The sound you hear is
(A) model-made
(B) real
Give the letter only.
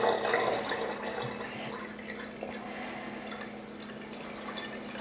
B